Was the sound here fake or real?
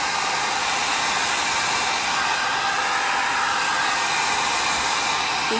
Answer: real